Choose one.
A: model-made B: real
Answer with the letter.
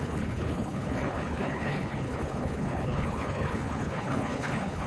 A